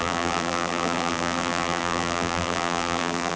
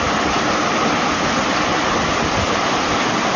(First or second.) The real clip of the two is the second